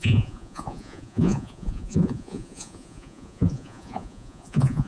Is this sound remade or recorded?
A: remade